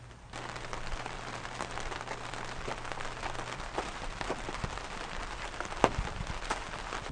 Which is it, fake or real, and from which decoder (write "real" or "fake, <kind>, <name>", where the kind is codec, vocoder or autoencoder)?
fake, vocoder, BigVGAN v2